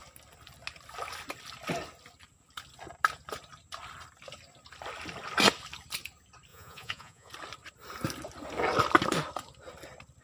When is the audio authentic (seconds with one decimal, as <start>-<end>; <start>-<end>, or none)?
0.0-6.5; 7.3-10.2